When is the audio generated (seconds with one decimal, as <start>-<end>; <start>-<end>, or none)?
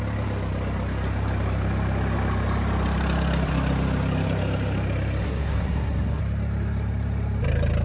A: 5.2-6.2